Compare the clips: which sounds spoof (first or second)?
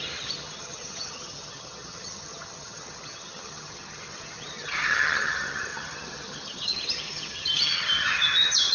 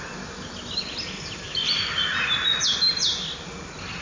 first